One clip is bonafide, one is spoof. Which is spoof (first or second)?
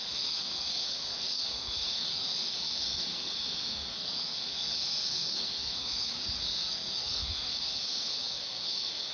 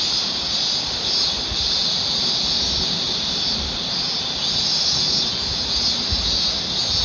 first